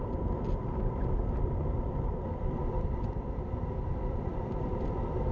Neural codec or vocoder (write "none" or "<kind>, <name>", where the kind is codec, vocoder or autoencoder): vocoder, BigVGAN v2